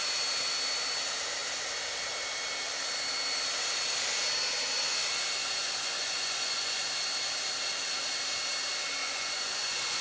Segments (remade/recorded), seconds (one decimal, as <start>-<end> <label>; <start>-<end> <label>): 0.0-5.4 recorded; 5.4-6.9 remade; 6.9-9.0 recorded; 9.0-10.0 remade